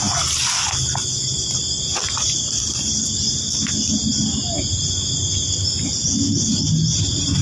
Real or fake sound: real